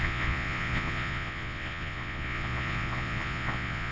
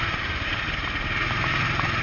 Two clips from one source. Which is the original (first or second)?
second